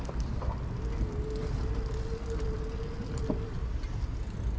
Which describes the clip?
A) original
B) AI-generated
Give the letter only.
A